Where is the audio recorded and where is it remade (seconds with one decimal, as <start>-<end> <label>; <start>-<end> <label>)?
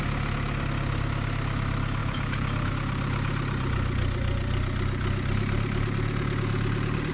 0.0-2.0 recorded; 2.0-2.7 remade; 2.7-7.1 recorded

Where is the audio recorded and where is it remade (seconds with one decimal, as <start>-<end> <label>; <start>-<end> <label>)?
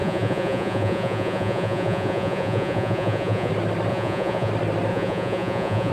0.0-3.5 remade; 3.5-3.9 recorded; 3.9-4.5 remade; 4.5-4.9 recorded; 4.9-5.9 remade